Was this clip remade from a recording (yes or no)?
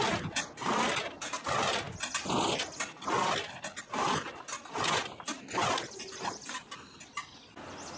no